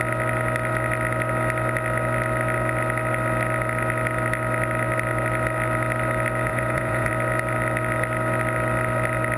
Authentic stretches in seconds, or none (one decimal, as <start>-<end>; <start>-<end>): 0.0-6.5; 7.1-9.4